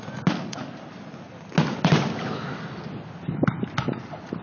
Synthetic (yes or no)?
no